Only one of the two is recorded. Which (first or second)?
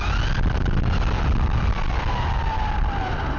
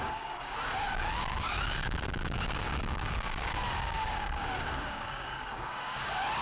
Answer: first